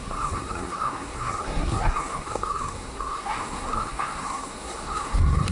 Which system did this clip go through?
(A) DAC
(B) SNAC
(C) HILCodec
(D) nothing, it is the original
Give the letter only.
B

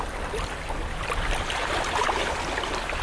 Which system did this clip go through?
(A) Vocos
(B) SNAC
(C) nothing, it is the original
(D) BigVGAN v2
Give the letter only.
C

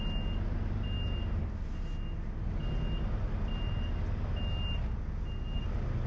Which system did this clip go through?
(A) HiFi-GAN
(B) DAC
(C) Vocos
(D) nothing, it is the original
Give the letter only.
D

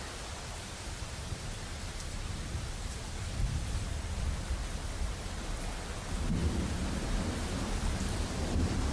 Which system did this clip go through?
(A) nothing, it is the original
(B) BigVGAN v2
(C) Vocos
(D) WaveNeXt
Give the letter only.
B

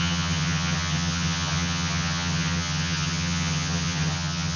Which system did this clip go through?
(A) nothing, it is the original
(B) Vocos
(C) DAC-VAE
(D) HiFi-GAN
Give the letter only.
D